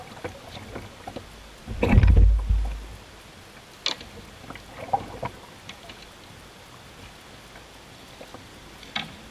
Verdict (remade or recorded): recorded